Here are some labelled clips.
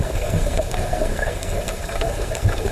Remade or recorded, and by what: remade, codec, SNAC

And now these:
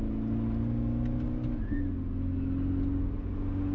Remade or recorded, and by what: recorded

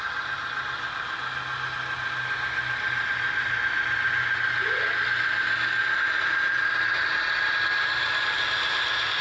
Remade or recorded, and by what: recorded